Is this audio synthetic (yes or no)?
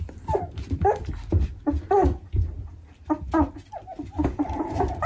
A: no